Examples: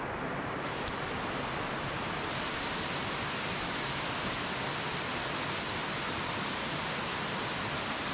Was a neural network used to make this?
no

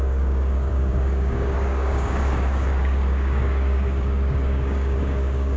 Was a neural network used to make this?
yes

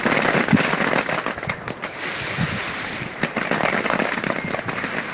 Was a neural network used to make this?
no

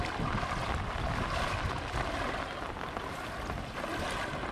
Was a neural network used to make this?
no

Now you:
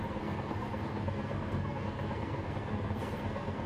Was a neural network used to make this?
yes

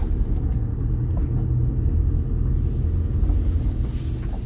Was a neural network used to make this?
no